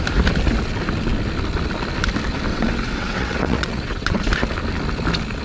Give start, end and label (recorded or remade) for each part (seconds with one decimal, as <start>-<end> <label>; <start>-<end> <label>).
0.0-2.5 recorded; 2.5-4.2 remade; 4.2-5.4 recorded